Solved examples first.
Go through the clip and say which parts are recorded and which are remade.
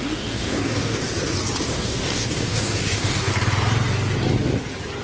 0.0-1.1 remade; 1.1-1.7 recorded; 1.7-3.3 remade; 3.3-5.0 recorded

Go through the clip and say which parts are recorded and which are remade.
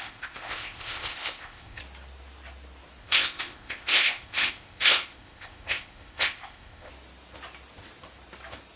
0.0-1.8 remade; 1.8-3.0 recorded; 3.0-6.9 remade; 6.9-8.8 recorded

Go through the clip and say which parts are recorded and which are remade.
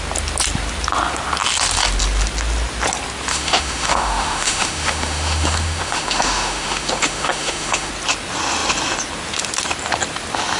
0.0-3.3 recorded; 3.3-7.9 remade; 7.9-10.6 recorded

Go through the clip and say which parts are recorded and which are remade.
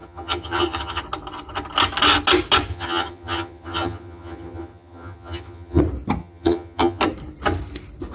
0.0-1.0 remade; 1.0-2.7 recorded; 2.7-5.8 remade; 5.8-6.2 recorded; 6.2-7.0 remade; 7.0-8.1 recorded